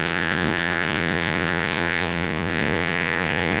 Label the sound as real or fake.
fake